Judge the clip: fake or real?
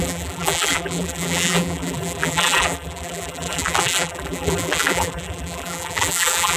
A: fake